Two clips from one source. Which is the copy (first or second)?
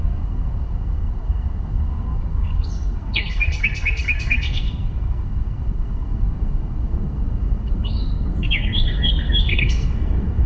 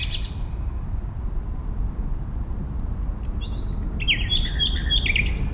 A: first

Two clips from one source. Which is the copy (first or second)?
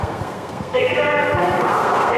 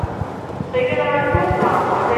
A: first